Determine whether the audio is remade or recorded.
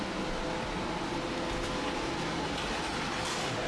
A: recorded